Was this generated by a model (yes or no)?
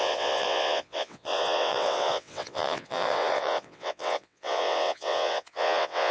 yes